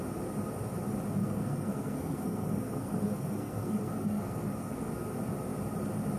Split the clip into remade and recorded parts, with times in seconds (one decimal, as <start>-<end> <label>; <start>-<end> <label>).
0.0-1.2 recorded; 1.2-4.9 remade; 4.9-6.2 recorded